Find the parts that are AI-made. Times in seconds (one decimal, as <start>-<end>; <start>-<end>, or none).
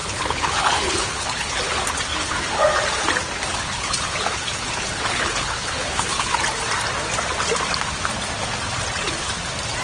0.0-1.5; 2.1-2.6; 3.5-6.4